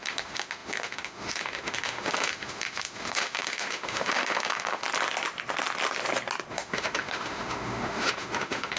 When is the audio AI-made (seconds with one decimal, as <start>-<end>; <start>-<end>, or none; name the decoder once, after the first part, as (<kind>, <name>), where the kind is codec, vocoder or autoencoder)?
0.0-4.8 (autoencoder, DAC-VAE); 6.5-8.8